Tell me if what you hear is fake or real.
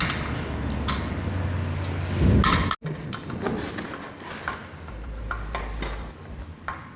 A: real